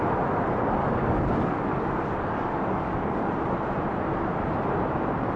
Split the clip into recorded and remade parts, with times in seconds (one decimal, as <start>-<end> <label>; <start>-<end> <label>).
0.0-0.8 recorded; 0.8-3.3 remade; 3.3-5.4 recorded